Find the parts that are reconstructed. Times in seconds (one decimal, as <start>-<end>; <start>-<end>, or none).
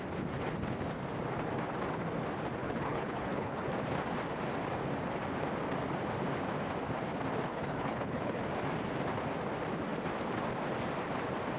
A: 2.6-3.7; 7.5-8.4